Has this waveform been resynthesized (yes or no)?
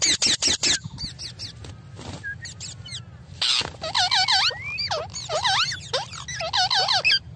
no